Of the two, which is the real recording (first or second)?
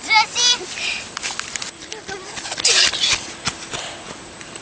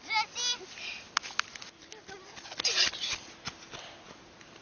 second